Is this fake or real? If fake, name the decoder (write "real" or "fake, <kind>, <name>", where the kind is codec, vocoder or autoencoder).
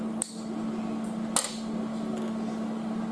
real